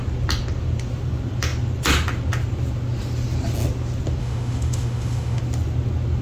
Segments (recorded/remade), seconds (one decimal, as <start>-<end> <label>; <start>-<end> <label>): 0.0-4.2 recorded; 4.2-5.4 remade; 5.4-6.2 recorded